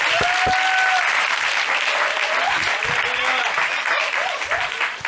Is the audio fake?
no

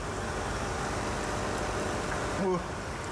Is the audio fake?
no